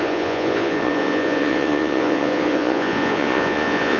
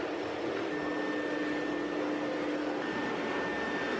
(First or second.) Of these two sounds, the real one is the second